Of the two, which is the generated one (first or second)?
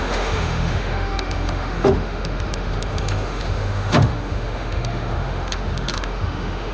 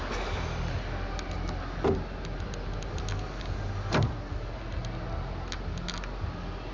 first